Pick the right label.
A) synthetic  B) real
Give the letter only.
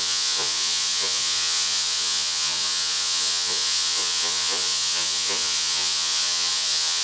A